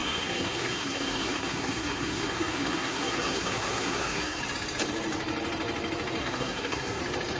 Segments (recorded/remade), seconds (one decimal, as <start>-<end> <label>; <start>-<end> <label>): 0.0-4.4 remade; 4.4-6.2 recorded; 6.2-7.0 remade; 7.0-7.4 recorded